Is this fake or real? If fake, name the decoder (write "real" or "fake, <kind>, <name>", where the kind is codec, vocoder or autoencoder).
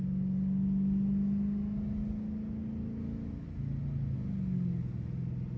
real